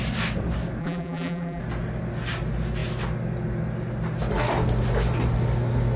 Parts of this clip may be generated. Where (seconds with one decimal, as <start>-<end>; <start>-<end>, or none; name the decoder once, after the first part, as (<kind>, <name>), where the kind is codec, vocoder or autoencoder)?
0.8-1.6 (vocoder, BigVGAN v2)